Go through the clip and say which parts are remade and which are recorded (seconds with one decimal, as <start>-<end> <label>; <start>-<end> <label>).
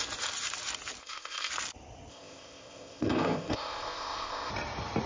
0.0-1.0 recorded; 1.0-1.5 remade; 1.5-2.1 recorded; 2.1-4.5 remade; 4.5-5.1 recorded